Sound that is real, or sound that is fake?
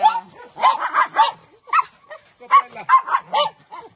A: real